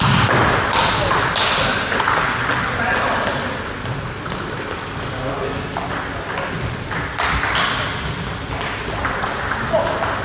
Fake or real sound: real